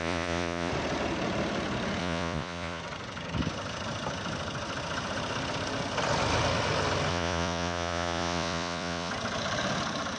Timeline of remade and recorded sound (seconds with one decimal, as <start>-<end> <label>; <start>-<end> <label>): 0.0-0.7 remade; 0.7-2.0 recorded; 2.0-2.8 remade; 2.8-7.1 recorded; 7.1-9.1 remade; 9.1-10.2 recorded